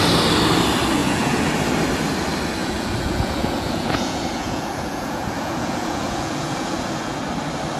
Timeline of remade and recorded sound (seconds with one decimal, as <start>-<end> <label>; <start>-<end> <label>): 0.0-1.0 recorded; 1.0-1.5 remade; 1.5-2.6 recorded; 2.6-7.2 remade; 7.2-7.8 recorded